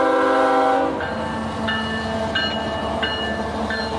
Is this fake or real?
real